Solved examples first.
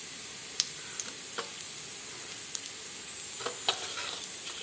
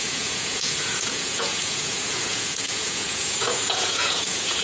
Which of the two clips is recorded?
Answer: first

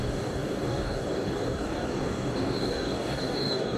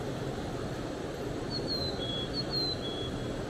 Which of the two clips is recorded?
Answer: second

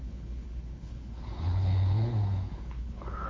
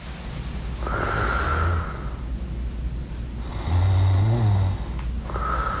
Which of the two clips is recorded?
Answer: second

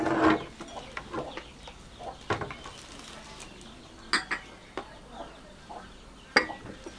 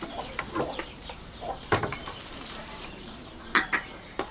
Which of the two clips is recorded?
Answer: first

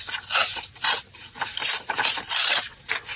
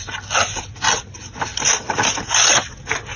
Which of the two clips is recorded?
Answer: second